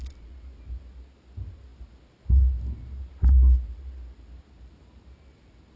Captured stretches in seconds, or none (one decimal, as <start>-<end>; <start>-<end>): 0.0-5.8